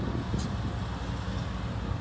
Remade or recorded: recorded